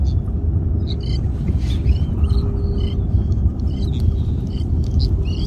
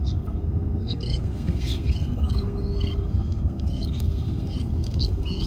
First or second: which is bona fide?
first